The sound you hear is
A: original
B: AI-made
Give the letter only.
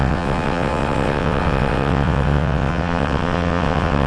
B